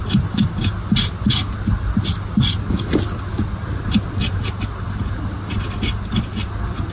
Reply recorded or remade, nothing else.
recorded